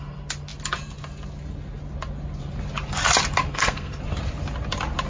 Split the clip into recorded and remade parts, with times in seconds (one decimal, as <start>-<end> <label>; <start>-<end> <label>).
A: 0.0-3.5 recorded; 3.5-4.0 remade; 4.0-5.1 recorded